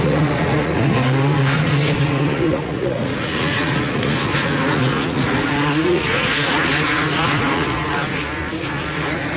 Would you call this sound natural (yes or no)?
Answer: no